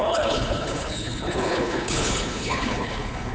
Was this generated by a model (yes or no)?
yes